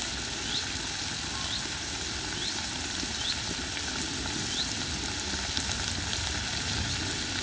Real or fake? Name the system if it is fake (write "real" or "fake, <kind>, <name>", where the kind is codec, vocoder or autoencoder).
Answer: real